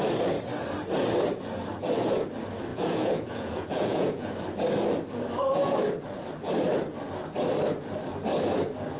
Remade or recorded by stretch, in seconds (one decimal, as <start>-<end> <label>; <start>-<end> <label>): 0.0-2.7 recorded; 2.7-4.3 remade; 4.3-9.0 recorded